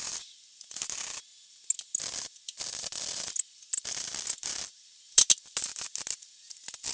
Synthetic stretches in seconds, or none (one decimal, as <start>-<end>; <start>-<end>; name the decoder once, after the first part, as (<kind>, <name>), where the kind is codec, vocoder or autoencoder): none